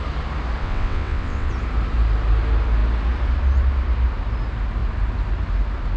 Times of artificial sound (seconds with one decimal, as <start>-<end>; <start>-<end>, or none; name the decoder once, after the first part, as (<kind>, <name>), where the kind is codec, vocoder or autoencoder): 0.6-1.5 (vocoder, WaveNeXt)